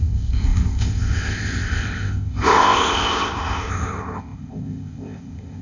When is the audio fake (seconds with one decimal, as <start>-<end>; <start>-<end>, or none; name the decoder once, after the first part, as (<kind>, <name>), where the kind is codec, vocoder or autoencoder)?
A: 0.0-5.6 (codec, ZipCodec)